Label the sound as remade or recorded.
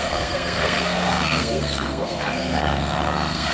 remade